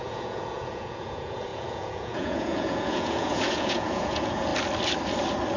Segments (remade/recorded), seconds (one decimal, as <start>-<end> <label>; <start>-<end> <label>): 0.0-4.5 remade; 4.5-5.6 recorded